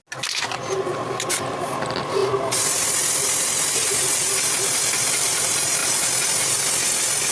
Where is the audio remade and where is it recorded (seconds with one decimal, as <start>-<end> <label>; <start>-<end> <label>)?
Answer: 0.0-7.3 recorded